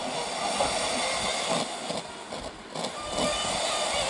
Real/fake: real